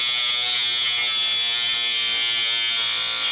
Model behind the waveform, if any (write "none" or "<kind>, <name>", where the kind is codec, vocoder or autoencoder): none